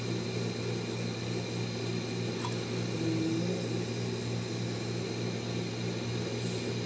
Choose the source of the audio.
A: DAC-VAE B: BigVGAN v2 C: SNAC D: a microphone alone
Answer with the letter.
D